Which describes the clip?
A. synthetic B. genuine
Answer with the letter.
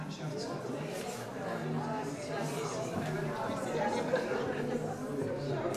B